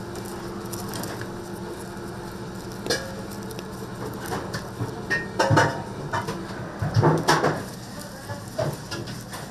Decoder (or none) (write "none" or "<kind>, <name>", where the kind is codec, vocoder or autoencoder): none